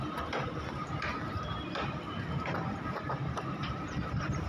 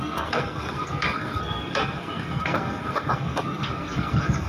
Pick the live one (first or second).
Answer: first